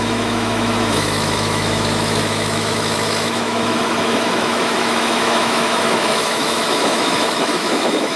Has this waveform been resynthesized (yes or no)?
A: yes